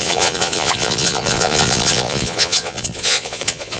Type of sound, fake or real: fake